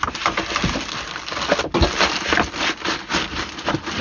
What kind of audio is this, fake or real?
real